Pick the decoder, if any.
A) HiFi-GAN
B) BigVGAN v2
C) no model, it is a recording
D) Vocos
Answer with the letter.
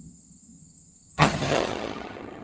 A